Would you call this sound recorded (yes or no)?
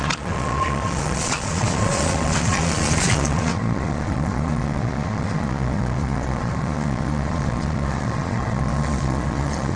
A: no